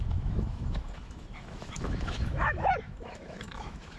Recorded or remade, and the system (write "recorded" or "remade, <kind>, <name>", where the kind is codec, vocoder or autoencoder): remade, autoencoder, DAC-VAE